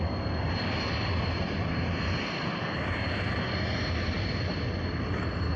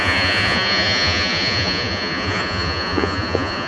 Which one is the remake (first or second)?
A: second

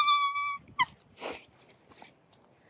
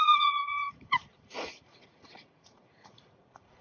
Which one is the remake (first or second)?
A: second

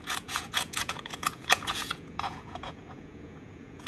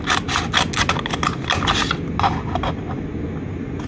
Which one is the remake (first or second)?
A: first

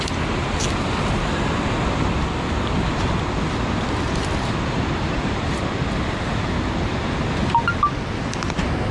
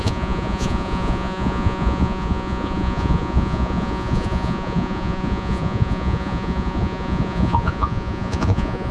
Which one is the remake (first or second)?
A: second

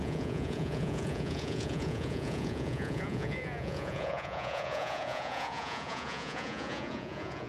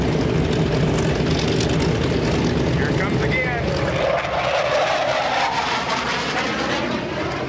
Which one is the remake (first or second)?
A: first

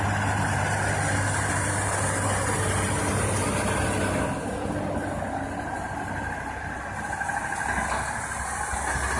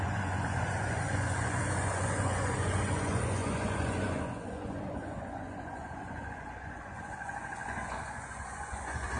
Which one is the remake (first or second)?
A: second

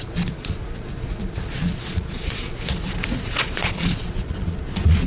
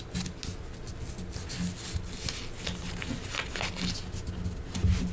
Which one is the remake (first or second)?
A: first